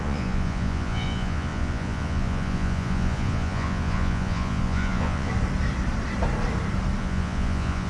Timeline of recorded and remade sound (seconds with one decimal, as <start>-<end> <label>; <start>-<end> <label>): 0.0-5.3 remade; 5.3-7.0 recorded; 7.0-7.9 remade